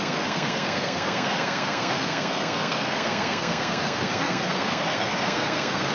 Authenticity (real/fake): fake